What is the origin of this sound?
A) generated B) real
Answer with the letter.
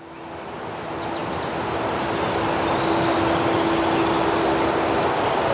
B